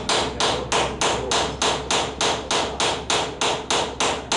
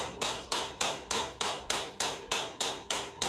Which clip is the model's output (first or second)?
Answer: second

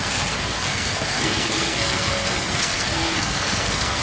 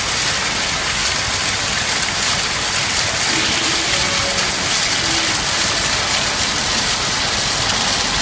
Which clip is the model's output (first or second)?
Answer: first